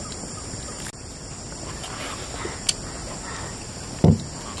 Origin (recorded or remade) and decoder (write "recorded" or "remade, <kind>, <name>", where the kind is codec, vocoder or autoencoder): recorded